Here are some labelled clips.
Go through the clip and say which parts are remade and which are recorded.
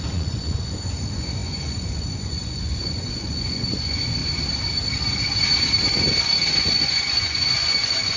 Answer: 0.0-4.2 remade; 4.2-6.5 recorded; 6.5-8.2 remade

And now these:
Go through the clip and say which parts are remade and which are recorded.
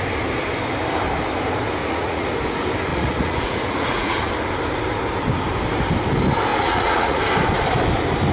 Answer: 0.0-1.8 recorded; 1.8-2.3 remade; 2.3-2.9 recorded; 2.9-4.3 remade; 4.3-6.5 recorded; 6.5-7.2 remade; 7.2-8.3 recorded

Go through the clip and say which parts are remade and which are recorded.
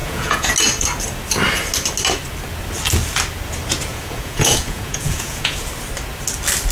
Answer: 0.0-0.5 remade; 0.5-3.9 recorded; 3.9-5.7 remade; 5.7-6.7 recorded